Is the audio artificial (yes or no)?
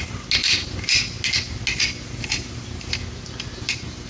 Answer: no